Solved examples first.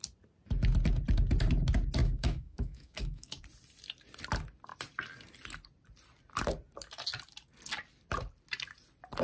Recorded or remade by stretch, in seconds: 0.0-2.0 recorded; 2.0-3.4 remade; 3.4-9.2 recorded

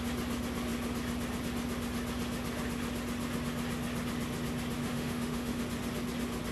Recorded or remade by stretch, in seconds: 0.0-4.8 recorded; 4.8-5.6 remade; 5.6-6.5 recorded